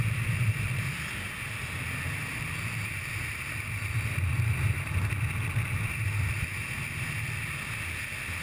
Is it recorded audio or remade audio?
recorded